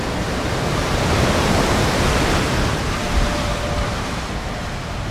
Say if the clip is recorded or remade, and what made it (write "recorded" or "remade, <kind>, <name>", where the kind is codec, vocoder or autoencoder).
remade, vocoder, BigVGAN v2